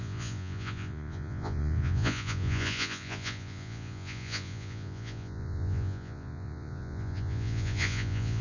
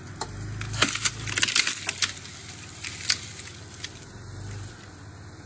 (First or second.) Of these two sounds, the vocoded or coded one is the first